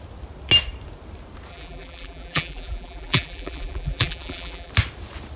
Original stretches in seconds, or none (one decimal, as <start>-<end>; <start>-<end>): 0.0-1.5; 4.7-5.4